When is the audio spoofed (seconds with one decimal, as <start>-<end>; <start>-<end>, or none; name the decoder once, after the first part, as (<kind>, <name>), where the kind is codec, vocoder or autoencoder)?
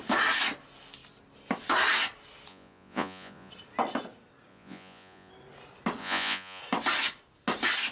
2.5-3.5 (vocoder, Vocos); 4.5-5.3; 6.0-6.6